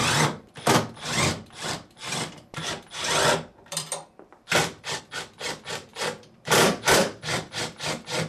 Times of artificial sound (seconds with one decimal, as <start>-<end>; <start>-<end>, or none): 0.0-5.0; 5.9-7.6